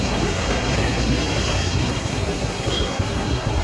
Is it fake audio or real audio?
fake